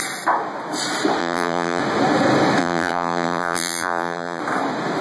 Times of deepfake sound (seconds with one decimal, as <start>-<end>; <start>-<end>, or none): 1.2-1.8; 2.6-4.4

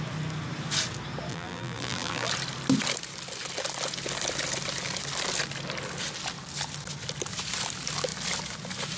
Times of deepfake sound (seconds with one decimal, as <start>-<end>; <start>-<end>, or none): 1.3-2.3

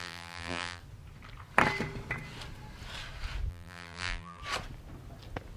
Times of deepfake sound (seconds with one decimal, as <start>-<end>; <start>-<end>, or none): 0.0-0.8; 3.5-4.4

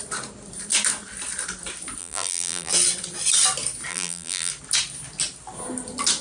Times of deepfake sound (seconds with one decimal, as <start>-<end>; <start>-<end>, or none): 2.0-2.7; 3.9-4.5